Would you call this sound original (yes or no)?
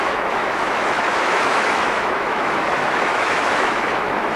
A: no